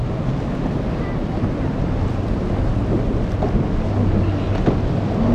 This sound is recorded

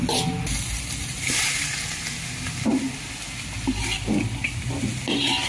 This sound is recorded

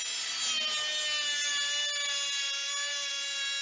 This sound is recorded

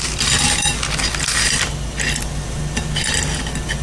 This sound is recorded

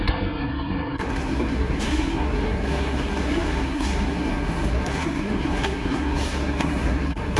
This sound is remade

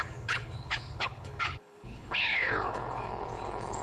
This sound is remade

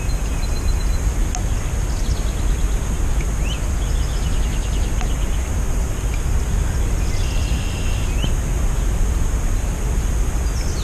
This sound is recorded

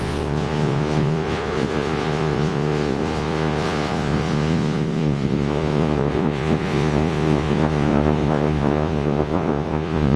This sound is remade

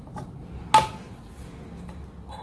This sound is recorded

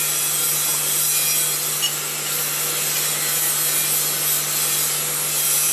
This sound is recorded